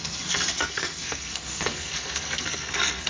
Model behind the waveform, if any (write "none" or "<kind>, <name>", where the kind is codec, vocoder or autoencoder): codec, SNAC